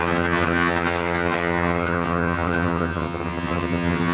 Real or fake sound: fake